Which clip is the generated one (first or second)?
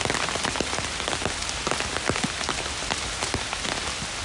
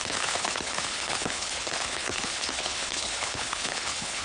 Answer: second